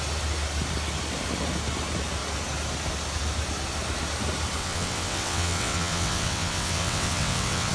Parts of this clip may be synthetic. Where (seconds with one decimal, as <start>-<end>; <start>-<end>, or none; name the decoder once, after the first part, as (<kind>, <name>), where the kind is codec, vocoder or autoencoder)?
4.6-7.7 (vocoder, WaveNeXt)